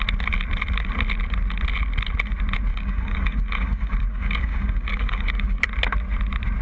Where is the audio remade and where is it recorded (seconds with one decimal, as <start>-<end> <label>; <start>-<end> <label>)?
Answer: 0.0-2.7 recorded; 2.7-5.6 remade; 5.6-6.6 recorded